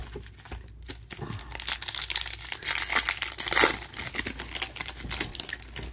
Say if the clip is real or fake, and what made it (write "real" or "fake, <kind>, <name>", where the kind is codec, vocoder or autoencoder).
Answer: real